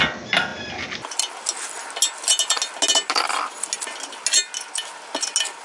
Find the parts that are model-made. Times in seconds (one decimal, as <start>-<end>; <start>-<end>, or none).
none